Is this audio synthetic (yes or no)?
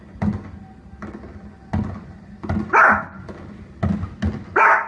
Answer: no